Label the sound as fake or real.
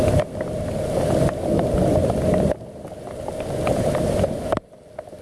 real